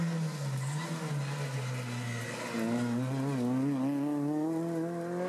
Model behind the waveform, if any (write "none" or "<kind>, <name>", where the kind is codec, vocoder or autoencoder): none